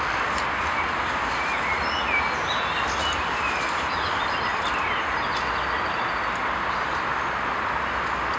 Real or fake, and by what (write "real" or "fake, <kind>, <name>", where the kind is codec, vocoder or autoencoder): real